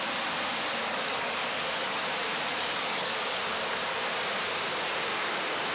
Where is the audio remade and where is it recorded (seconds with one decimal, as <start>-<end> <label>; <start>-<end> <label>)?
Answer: 0.0-0.8 recorded; 0.8-2.0 remade; 2.0-2.5 recorded; 2.5-3.4 remade; 3.4-5.1 recorded; 5.1-5.7 remade

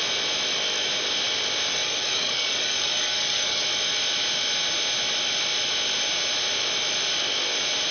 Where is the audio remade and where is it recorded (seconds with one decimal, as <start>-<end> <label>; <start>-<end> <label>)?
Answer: 0.0-1.7 recorded; 1.7-3.6 remade; 3.6-7.9 recorded